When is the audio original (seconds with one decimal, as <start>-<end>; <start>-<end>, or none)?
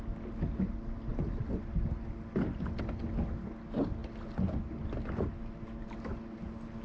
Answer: 0.0-6.8